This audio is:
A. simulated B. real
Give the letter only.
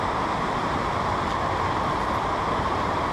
B